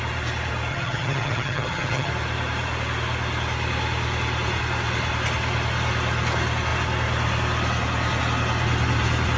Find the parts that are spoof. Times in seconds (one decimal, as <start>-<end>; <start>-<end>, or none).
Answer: 0.7-2.1